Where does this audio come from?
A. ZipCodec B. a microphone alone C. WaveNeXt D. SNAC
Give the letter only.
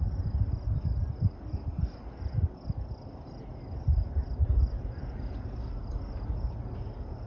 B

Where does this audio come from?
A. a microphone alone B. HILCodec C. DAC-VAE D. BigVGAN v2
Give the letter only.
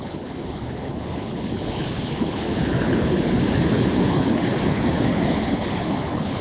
B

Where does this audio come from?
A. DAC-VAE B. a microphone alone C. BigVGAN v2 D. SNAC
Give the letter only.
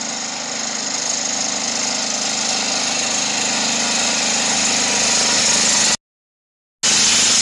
B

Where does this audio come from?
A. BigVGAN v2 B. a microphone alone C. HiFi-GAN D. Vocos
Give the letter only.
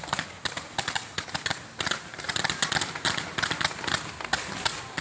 B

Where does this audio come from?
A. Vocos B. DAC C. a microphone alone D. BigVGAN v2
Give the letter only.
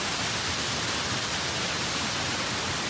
C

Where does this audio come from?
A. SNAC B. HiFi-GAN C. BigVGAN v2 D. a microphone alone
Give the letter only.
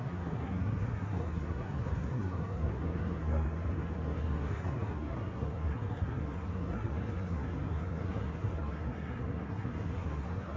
A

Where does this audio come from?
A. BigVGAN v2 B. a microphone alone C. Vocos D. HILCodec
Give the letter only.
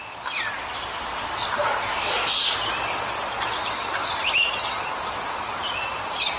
B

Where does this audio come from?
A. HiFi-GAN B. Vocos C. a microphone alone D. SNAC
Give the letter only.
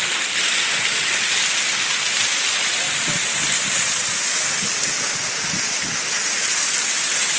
C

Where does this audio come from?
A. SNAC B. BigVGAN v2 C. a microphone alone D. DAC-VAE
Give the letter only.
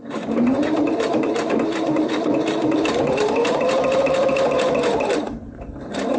B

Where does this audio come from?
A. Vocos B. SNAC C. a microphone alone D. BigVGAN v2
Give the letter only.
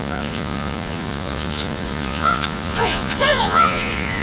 A